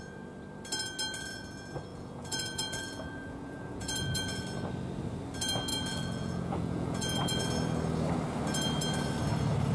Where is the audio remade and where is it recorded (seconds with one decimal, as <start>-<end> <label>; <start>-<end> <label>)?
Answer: 0.0-1.9 recorded; 1.9-4.4 remade; 4.4-5.7 recorded; 5.7-7.4 remade; 7.4-9.7 recorded